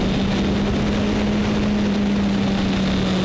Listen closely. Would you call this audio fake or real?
real